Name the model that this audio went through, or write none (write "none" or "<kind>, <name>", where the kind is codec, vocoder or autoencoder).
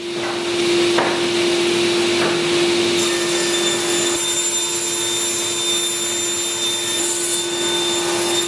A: none